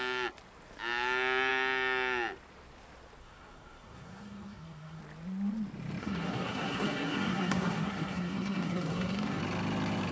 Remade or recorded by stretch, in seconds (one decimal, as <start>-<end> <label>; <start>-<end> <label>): 0.0-3.2 recorded; 3.2-5.0 remade; 5.0-6.0 recorded; 6.0-9.4 remade; 9.4-10.1 recorded